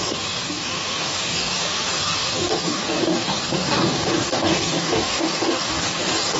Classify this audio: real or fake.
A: fake